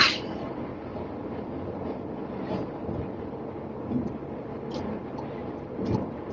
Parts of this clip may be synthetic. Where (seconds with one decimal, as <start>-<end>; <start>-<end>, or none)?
none